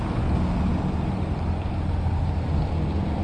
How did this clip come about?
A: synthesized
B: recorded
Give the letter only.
B